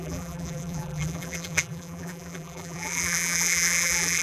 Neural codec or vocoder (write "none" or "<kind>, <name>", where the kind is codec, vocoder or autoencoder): vocoder, BigVGAN v2